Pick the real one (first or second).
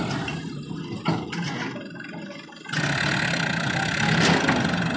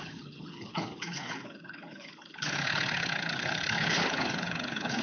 first